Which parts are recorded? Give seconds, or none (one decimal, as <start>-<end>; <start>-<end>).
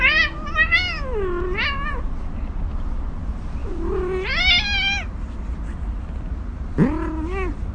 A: 0.0-7.7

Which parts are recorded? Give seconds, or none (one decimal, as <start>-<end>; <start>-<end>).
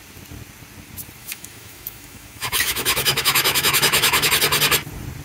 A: 0.0-1.2; 4.3-5.2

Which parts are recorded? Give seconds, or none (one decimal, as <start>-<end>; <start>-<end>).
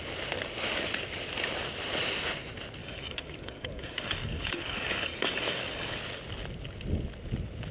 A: 0.0-2.8; 6.0-7.7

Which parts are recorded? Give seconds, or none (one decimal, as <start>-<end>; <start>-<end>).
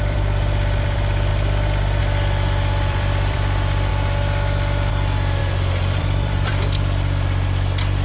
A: 1.3-2.0; 3.9-4.9